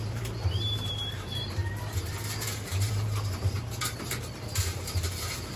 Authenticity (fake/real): fake